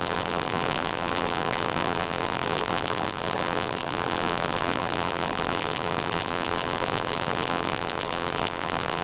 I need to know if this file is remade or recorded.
remade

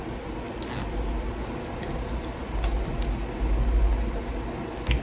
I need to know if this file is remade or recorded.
recorded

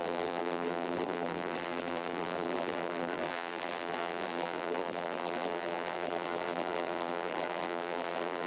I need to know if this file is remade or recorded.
remade